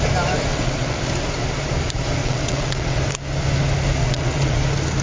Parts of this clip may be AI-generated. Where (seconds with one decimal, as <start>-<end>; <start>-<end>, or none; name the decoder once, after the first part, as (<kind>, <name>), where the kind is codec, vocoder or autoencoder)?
0.5-1.0 (vocoder, WaveNeXt); 2.2-3.0; 4.0-4.6